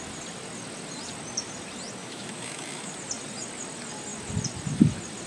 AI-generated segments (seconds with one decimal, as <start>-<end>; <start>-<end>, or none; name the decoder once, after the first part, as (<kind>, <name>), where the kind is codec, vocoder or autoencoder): 2.0-2.9 (autoencoder, DAC-VAE)